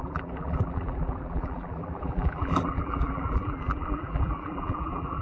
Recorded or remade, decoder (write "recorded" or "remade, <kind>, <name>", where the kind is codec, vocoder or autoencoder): remade, vocoder, BigVGAN v2